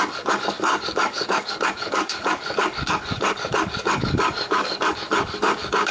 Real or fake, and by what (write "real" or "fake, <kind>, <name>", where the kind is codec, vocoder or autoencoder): fake, codec, DAC